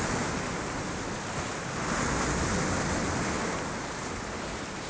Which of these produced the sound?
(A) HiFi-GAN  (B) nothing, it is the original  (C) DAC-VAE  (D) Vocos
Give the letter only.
B